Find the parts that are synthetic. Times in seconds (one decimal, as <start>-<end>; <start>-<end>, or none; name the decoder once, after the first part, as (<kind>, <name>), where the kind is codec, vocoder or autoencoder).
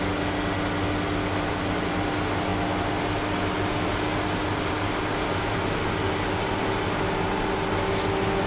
5.1-5.6 (vocoder, BigVGAN v2)